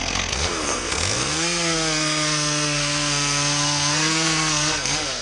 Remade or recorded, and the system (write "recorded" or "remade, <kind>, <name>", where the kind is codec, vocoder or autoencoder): remade, codec, SNAC